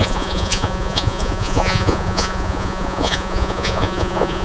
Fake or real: fake